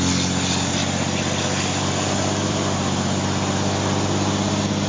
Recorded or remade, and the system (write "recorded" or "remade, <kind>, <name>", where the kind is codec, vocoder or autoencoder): recorded